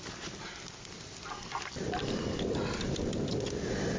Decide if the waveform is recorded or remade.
recorded